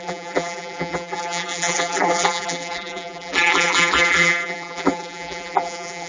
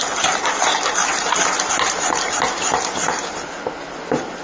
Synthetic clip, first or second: first